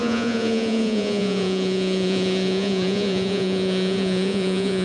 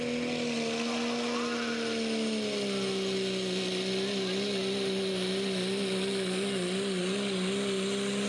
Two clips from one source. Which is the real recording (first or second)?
second